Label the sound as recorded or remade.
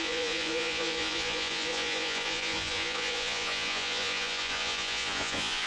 remade